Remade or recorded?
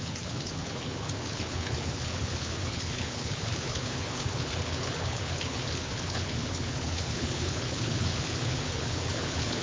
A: remade